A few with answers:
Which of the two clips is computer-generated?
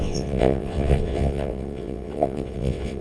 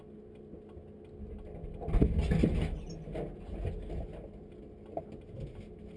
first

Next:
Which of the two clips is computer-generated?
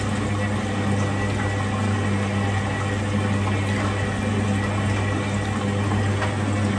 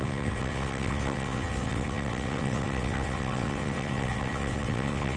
second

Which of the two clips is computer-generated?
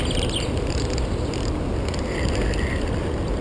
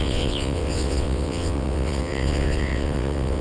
second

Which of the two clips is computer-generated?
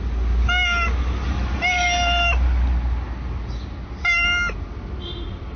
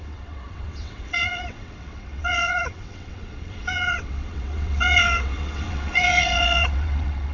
second